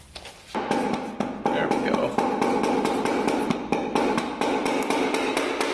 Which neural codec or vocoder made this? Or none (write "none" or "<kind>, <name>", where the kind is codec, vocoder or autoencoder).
none